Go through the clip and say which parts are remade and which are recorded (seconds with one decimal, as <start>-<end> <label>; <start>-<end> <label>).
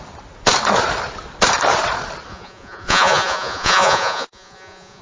0.0-2.3 recorded; 2.3-5.0 remade